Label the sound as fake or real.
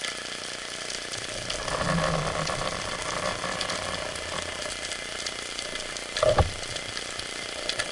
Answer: real